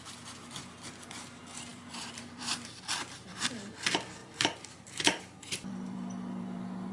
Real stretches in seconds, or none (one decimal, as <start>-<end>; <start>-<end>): 0.0-1.7; 3.5-4.2